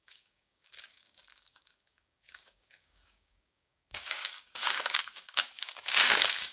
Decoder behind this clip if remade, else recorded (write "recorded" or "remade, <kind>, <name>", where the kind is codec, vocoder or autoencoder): remade, codec, DAC